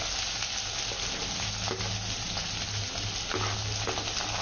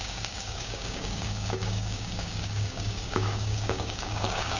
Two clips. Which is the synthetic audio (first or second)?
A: second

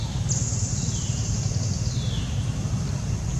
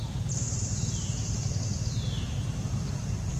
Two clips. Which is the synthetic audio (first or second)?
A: first